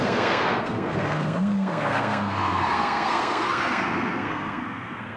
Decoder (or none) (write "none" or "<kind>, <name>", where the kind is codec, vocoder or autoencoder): codec, SNAC